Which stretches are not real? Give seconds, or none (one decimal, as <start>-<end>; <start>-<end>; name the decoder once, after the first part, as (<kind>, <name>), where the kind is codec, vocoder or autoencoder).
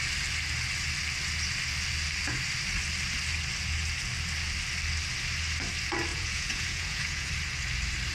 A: 6.1-7.3 (vocoder, Vocos)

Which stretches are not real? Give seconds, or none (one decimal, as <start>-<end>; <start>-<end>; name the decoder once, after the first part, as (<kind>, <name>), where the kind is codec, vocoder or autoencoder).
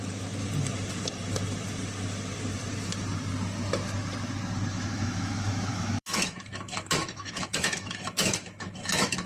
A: 4.7-9.3 (autoencoder, DAC-VAE)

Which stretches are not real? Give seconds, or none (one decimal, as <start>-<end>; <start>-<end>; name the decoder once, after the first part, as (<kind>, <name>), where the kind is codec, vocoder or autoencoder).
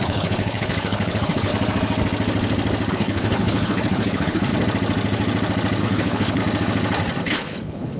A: 0.0-1.5 (codec, HILCodec); 2.9-4.5; 5.8-6.4; 7.2-8.0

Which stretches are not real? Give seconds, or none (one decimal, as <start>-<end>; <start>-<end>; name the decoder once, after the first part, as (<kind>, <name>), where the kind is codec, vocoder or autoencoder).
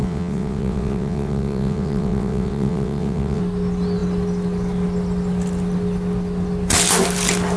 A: 0.0-3.4 (vocoder, WaveNeXt)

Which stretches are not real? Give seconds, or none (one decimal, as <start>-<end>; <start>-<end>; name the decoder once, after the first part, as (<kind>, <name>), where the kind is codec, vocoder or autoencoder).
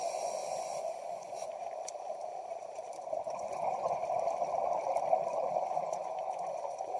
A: 0.0-1.4 (vocoder, Vocos); 3.0-4.0; 5.6-7.0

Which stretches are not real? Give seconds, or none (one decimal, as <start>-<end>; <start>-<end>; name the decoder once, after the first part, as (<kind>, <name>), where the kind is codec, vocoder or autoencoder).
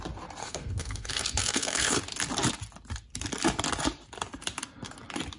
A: 0.4-2.0 (codec, SNAC)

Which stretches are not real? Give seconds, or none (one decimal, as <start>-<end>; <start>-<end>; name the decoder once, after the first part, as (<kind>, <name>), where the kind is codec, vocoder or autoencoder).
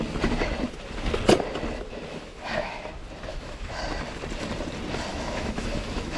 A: 2.1-2.7 (autoencoder, DAC-VAE); 3.3-3.8; 5.1-6.2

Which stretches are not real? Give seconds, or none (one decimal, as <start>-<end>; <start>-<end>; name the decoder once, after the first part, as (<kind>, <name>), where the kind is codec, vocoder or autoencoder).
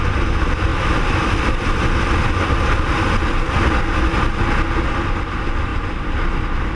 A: 0.7-3.8 (vocoder, BigVGAN v2); 5.7-6.8